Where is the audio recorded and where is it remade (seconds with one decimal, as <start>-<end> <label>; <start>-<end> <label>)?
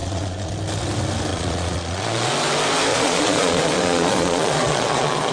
0.0-0.5 remade; 0.5-1.3 recorded; 1.3-2.3 remade; 2.3-2.9 recorded; 2.9-5.3 remade